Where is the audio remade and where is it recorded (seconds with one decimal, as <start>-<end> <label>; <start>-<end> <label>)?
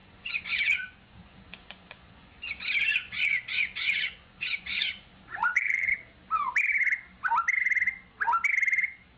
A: 0.0-2.5 remade; 2.5-2.9 recorded; 2.9-5.9 remade; 5.9-9.2 recorded